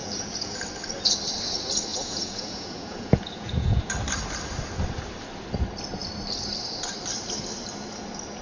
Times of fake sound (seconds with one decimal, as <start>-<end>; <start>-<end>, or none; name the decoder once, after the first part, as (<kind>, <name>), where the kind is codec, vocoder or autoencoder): 0.0-0.6 (vocoder, Vocos); 1.9-3.9